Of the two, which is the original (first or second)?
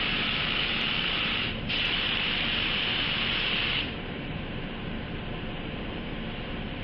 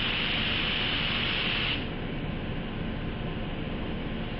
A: second